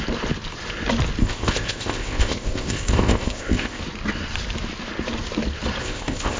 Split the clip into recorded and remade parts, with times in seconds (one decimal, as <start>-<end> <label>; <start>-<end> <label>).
0.0-1.2 recorded; 1.2-3.8 remade; 3.8-5.8 recorded; 5.8-6.4 remade